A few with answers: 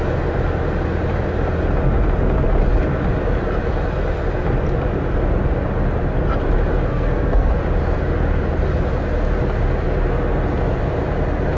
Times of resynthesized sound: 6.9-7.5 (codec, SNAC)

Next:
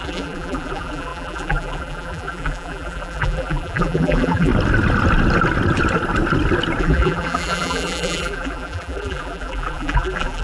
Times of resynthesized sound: 0.0-4.5 (vocoder, BigVGAN v2); 6.8-10.4

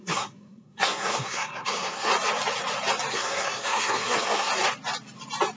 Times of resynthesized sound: 0.0-2.1 (codec, SNAC); 3.1-4.5

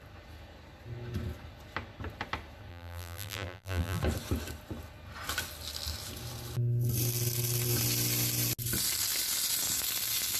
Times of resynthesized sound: 2.7-4.0 (vocoder, BigVGAN v2)

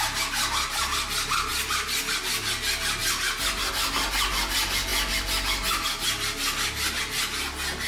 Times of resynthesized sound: none

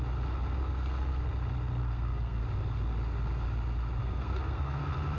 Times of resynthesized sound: 0.6-1.2 (codec, SNAC); 1.8-2.4; 4.0-4.8

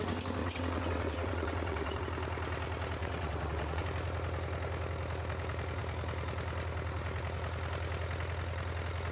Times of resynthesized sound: 0.4-2.0 (vocoder, WaveNeXt); 3.0-3.8